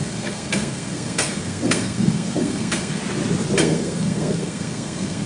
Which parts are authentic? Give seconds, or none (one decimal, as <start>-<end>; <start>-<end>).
3.0-3.6